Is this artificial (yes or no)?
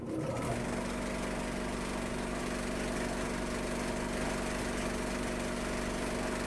no